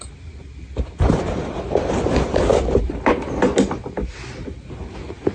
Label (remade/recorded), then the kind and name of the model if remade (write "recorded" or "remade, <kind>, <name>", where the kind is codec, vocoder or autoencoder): recorded